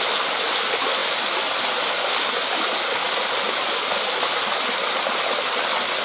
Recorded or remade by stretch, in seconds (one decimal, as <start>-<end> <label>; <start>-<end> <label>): 0.0-6.0 recorded